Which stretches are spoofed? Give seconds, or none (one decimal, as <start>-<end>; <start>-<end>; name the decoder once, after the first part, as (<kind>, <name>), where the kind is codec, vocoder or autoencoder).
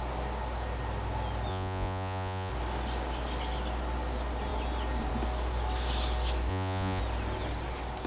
1.5-2.5 (vocoder, Vocos); 6.5-7.0